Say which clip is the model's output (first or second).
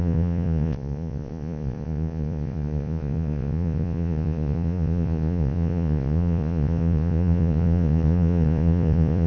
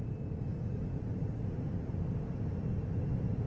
first